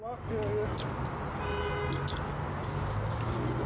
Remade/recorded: recorded